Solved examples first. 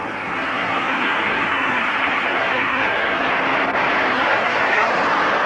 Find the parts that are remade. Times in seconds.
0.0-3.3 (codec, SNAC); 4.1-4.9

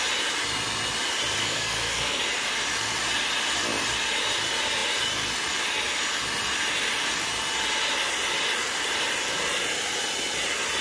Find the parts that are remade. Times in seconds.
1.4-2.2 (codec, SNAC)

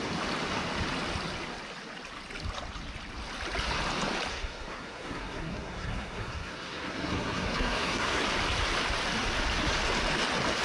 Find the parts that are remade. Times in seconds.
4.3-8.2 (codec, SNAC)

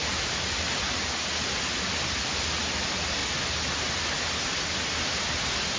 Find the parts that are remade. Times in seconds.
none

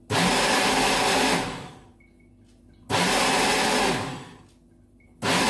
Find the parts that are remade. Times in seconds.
none

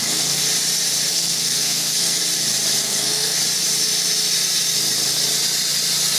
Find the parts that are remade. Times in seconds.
0.0-0.4 (codec, SNAC); 1.1-2.2; 2.8-3.4

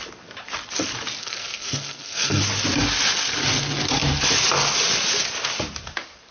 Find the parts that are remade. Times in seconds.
1.2-2.4 (codec, SNAC)